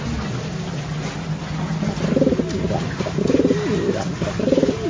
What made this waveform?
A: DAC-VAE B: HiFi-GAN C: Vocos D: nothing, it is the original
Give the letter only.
D